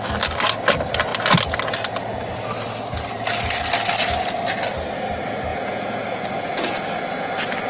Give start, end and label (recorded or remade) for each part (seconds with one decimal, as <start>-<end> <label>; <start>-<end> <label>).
0.0-5.5 recorded; 5.5-7.3 remade; 7.3-7.7 recorded